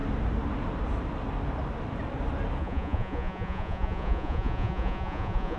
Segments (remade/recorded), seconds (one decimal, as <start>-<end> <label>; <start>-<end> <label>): 0.0-2.6 recorded; 2.6-5.6 remade

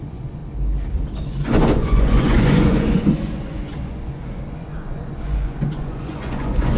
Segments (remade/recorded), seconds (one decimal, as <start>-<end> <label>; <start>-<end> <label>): 0.0-0.4 remade; 0.4-1.2 recorded; 1.2-6.8 remade

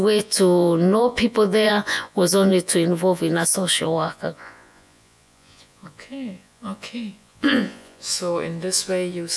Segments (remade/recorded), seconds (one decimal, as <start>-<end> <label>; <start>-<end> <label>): 0.0-9.4 remade

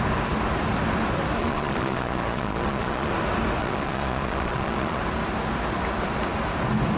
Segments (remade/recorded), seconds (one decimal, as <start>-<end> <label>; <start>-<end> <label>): 0.0-1.4 recorded; 1.4-3.1 remade; 3.1-3.6 recorded; 3.6-5.0 remade; 5.0-7.0 recorded